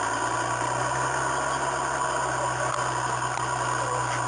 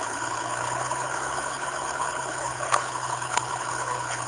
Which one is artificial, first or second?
second